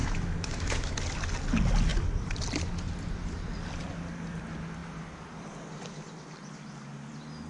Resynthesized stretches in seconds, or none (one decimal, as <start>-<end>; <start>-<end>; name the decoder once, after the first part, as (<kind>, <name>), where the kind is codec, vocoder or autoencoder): 0.0-1.0 (autoencoder, DAC-VAE)